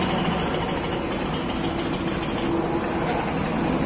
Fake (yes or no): no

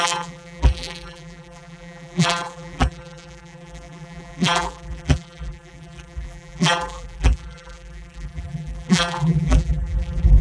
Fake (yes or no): yes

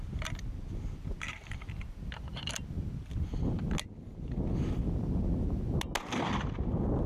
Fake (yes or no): no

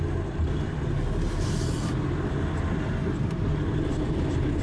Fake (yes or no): no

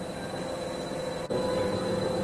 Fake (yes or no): no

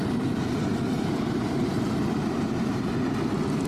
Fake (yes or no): yes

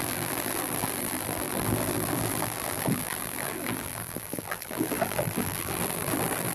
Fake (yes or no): yes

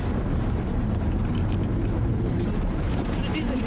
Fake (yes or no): yes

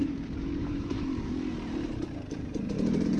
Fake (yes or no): yes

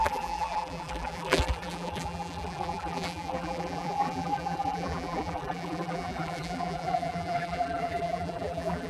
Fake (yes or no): yes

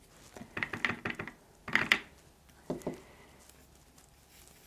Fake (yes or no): no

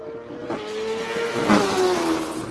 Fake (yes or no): no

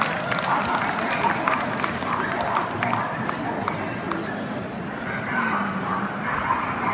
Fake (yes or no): no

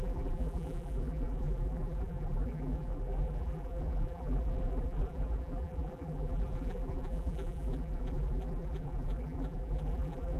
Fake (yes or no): yes